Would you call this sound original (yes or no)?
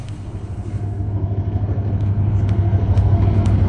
no